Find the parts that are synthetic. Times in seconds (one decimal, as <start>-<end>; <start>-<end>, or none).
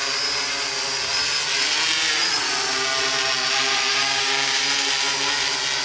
4.0-4.6